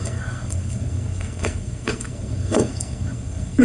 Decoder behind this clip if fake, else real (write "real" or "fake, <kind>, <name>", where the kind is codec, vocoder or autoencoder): fake, codec, SNAC